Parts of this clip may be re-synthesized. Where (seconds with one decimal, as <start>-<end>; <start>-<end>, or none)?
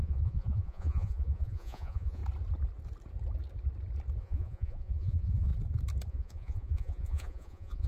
0.0-2.2; 4.2-5.5; 6.1-7.9